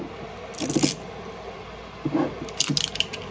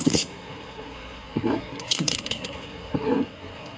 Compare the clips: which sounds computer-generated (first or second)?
second